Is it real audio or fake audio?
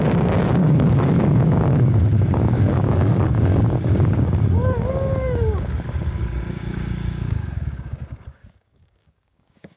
fake